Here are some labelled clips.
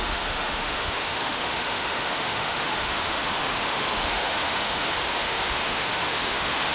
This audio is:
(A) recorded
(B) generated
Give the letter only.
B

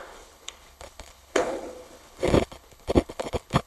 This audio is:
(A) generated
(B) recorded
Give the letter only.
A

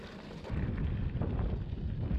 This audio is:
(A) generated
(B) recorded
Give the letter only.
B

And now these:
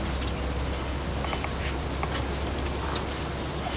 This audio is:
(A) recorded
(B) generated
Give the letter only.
A